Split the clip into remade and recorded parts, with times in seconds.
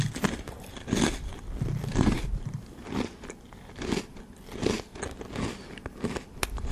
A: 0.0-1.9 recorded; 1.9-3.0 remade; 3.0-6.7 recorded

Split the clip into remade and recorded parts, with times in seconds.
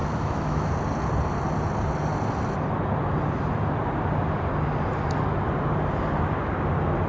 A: 0.0-0.7 remade; 0.7-7.1 recorded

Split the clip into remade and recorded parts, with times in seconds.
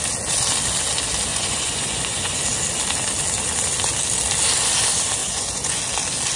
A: 0.0-1.3 recorded; 1.3-2.4 remade; 2.4-5.2 recorded; 5.2-5.8 remade; 5.8-6.4 recorded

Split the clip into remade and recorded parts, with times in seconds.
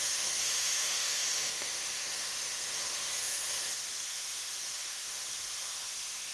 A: 0.0-6.3 remade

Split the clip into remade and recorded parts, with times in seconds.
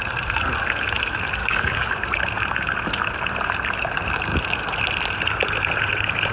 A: 0.0-1.4 recorded; 1.4-1.9 remade; 1.9-6.3 recorded